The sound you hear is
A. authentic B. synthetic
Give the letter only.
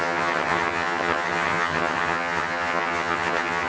B